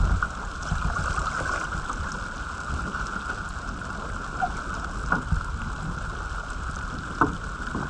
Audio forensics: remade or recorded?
recorded